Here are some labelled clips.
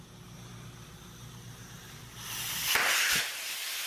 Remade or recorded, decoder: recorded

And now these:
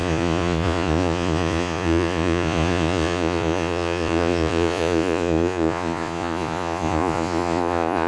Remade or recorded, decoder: remade, vocoder, Vocos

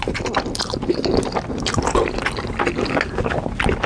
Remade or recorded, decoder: recorded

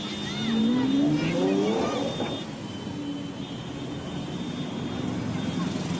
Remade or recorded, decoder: recorded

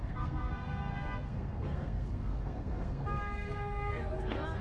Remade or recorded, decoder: remade, codec, SNAC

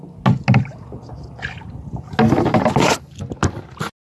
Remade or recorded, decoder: recorded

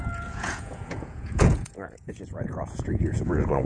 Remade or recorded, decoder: remade, vocoder, Vocos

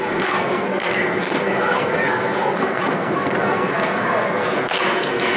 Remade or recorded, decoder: remade, codec, SNAC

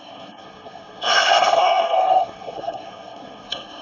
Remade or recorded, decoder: remade, codec, SNAC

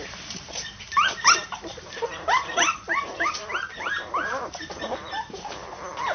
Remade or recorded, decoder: remade, vocoder, BigVGAN v2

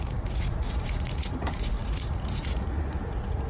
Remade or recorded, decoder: remade, vocoder, Vocos